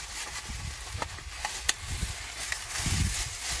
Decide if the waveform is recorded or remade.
recorded